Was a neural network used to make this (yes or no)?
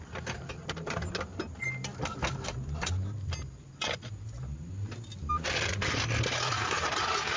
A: no